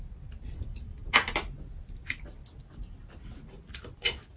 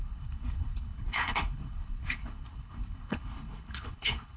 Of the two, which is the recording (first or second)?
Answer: first